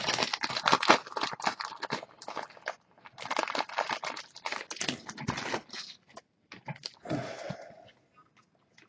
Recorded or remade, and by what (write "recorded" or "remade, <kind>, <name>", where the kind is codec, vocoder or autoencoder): recorded